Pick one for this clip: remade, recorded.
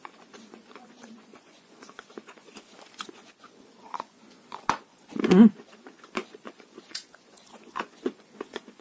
remade